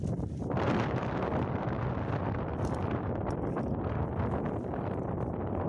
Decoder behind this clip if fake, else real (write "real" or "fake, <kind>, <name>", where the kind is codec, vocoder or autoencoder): real